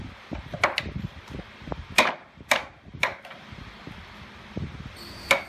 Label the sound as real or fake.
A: real